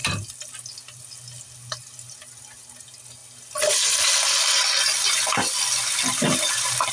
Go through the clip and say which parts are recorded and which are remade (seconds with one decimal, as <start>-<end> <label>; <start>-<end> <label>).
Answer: 0.0-6.9 recorded